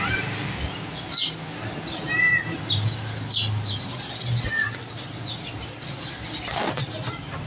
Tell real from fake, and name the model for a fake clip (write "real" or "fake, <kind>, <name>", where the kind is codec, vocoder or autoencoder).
real